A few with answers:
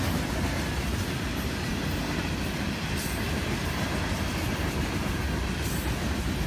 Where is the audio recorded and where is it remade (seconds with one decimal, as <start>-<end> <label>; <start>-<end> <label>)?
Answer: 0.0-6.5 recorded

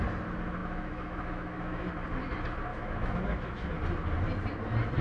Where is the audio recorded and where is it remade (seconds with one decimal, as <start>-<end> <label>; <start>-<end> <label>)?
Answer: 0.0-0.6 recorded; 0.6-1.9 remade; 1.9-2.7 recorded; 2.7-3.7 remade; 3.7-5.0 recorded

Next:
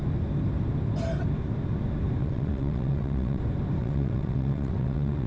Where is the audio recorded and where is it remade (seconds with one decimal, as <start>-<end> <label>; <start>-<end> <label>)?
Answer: 0.0-2.2 recorded; 2.2-3.4 remade; 3.4-3.8 recorded; 3.8-5.3 remade

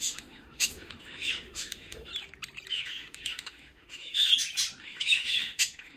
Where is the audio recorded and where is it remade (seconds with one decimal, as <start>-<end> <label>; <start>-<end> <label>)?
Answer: 0.0-2.1 remade; 2.1-2.7 recorded; 2.7-4.3 remade; 4.3-4.8 recorded; 4.8-6.0 remade

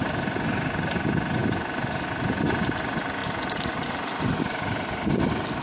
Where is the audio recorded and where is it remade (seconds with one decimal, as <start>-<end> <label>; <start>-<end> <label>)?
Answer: 0.0-5.6 recorded

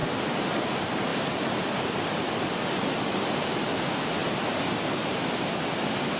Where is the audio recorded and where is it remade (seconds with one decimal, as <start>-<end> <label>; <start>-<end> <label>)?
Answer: 0.0-4.2 recorded; 4.2-5.3 remade; 5.3-6.2 recorded